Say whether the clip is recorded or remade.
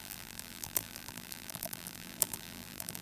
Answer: remade